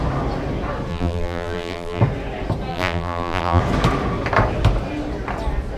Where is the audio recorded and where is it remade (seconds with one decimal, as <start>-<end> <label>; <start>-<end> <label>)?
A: 0.0-0.9 recorded; 0.9-2.0 remade; 2.0-2.7 recorded; 2.7-3.6 remade; 3.6-5.8 recorded